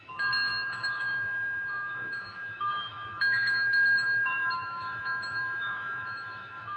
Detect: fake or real fake